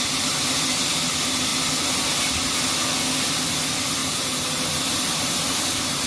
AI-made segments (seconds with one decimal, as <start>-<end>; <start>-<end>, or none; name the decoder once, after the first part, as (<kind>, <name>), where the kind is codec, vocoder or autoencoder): 4.0-5.6 (vocoder, BigVGAN v2)